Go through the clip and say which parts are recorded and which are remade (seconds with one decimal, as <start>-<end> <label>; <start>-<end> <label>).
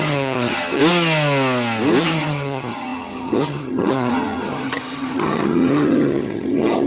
0.0-0.8 remade; 0.8-2.0 recorded; 2.0-6.9 remade